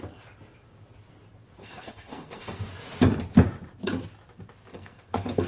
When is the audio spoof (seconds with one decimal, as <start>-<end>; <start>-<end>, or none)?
1.6-2.7; 4.7-5.5